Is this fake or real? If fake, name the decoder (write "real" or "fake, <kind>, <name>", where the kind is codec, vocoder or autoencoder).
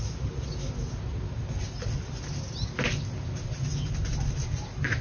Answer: real